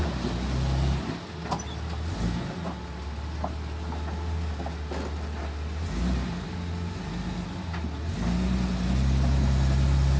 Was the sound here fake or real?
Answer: real